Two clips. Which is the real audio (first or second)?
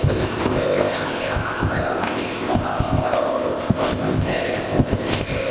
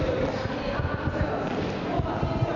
second